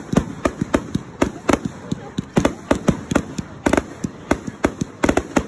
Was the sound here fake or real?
real